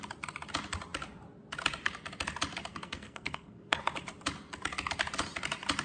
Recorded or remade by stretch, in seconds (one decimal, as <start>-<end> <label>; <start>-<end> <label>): 0.0-2.7 recorded; 2.7-3.8 remade; 3.8-5.8 recorded